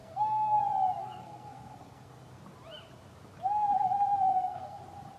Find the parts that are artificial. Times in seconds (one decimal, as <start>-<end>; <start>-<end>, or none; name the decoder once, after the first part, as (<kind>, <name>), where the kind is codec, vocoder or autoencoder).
0.0-0.6 (codec, SNAC); 1.0-2.4; 4.3-4.8